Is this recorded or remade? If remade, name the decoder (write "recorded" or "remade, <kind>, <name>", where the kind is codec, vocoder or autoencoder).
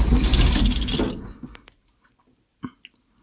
recorded